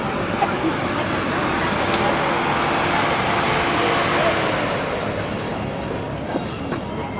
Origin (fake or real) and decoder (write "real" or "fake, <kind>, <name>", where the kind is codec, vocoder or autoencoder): real